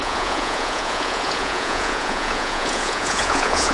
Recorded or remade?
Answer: remade